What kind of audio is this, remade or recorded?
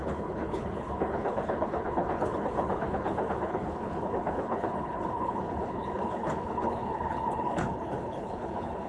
remade